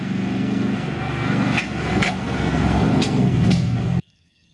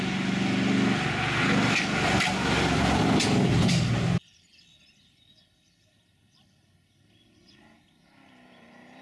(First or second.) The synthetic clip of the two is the first